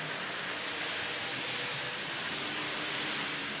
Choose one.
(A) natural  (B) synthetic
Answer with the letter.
A